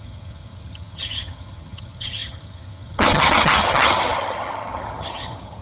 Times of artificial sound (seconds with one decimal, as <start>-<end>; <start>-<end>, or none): 0.0-5.6